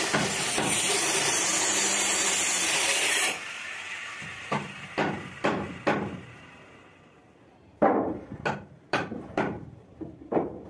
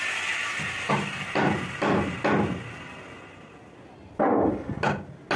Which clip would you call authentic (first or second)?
second